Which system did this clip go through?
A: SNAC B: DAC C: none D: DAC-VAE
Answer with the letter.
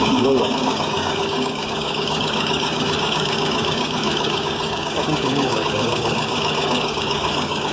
B